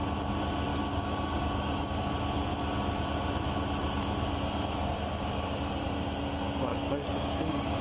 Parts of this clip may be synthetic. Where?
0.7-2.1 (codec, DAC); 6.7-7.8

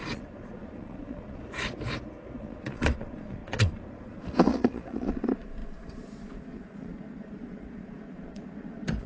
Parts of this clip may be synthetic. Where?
0.0-1.4 (vocoder, Vocos); 2.4-9.1

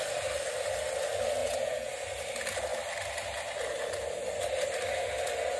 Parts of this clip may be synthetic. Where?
1.4-1.9 (vocoder, Vocos)

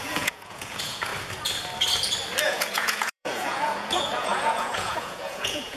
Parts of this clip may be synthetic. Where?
0.0-1.1 (vocoder, Vocos); 2.4-5.8

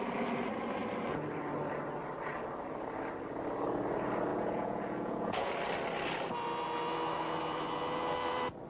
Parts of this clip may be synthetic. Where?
4.3-5.5 (vocoder, Vocos)

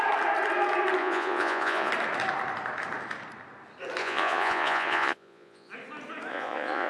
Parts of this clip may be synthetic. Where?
1.0-1.9 (vocoder, Vocos); 4.0-5.7; 6.3-6.9

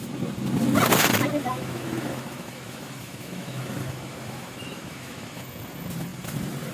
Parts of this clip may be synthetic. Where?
1.4-5.4 (autoencoder, DAC-VAE)

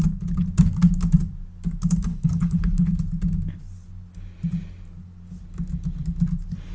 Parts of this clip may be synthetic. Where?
2.1-2.9 (codec, HILCodec)